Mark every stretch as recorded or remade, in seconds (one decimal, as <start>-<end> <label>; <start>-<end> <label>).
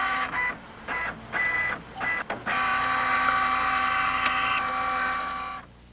0.0-0.5 remade; 0.5-5.9 recorded